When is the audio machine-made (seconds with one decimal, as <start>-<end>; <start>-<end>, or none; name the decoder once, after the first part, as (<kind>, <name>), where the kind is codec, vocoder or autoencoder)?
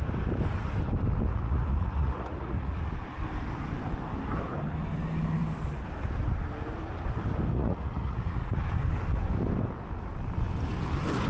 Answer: 1.3-2.9 (vocoder, Vocos); 7.5-8.6